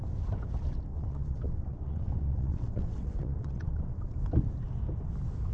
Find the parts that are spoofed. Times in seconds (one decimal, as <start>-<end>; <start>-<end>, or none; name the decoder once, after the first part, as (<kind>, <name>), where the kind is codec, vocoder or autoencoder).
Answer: 0.9-4.2 (vocoder, WaveNeXt)